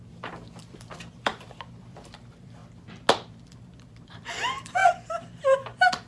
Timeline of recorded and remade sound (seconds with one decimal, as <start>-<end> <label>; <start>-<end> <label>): 0.0-2.6 remade; 2.6-3.3 recorded; 3.3-4.8 remade; 4.8-5.4 recorded; 5.4-6.1 remade